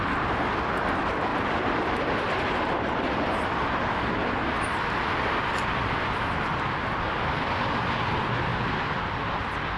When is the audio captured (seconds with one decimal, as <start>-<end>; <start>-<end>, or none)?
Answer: 0.0-1.3; 3.3-9.8